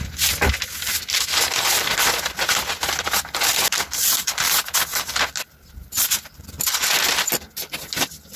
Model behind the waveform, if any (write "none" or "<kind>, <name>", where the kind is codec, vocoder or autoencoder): none